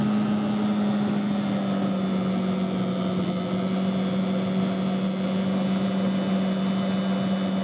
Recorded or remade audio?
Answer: recorded